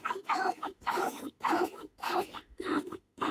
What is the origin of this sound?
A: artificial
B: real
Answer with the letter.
A